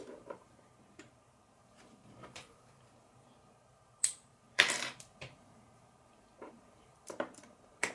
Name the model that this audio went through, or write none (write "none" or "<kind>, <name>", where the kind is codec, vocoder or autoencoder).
vocoder, BigVGAN v2